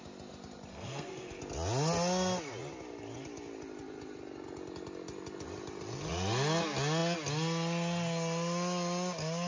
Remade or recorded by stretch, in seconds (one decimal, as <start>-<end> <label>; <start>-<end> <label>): 0.0-0.7 recorded; 0.7-1.4 remade; 1.4-9.5 recorded